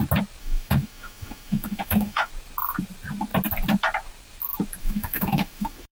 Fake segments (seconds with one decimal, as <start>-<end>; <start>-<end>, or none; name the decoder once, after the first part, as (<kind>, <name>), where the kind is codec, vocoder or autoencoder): 0.4-2.3 (autoencoder, DAC-VAE); 4.8-5.9